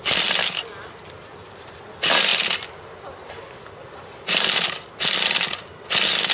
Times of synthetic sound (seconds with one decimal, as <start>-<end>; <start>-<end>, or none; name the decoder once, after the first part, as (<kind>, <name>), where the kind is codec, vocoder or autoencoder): none